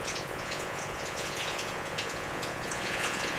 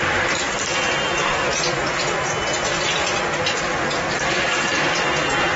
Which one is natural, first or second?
second